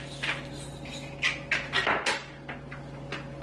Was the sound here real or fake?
real